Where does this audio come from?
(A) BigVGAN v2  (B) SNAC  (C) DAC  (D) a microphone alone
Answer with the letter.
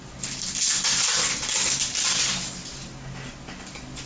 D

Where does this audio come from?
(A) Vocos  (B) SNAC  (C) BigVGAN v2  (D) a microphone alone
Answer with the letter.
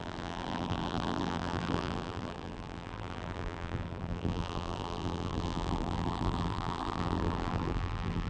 C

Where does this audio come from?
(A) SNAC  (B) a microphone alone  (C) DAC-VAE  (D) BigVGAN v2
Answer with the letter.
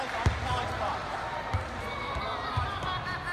B